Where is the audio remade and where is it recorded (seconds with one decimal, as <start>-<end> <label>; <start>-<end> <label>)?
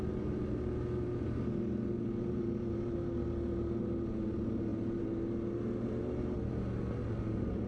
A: 0.0-7.7 recorded